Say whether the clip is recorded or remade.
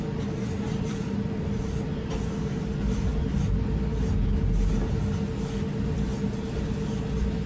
recorded